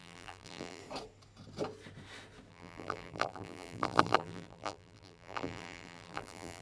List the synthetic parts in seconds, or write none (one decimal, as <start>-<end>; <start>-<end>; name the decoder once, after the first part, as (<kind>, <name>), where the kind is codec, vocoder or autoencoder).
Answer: 0.0-0.8 (vocoder, BigVGAN v2); 2.5-6.6